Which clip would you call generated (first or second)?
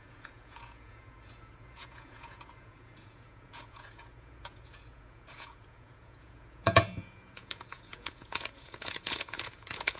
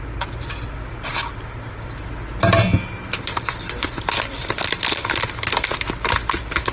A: first